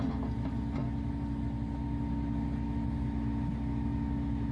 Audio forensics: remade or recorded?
recorded